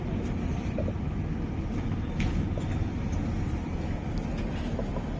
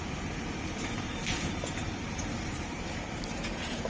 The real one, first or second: first